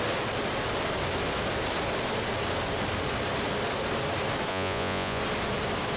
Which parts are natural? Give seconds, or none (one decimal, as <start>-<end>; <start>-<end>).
0.0-4.5; 5.2-6.0